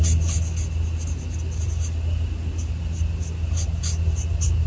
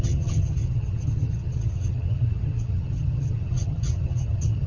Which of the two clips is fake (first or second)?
second